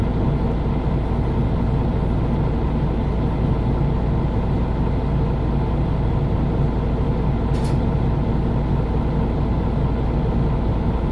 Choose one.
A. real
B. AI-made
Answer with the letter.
A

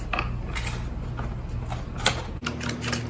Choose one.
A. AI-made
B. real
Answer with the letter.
B